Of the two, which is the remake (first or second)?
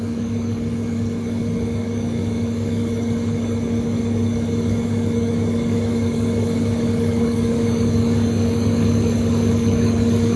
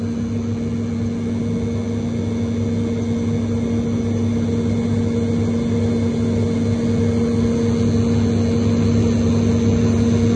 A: first